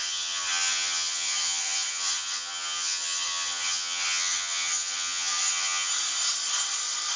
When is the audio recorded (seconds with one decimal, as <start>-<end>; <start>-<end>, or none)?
5.9-7.2